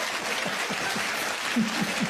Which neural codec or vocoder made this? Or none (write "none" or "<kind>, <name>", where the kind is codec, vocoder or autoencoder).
none